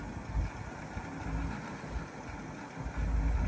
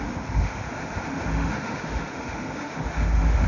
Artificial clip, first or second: second